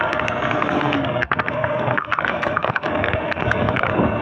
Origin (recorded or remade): remade